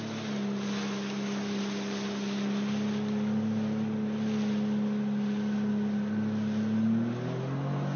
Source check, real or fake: real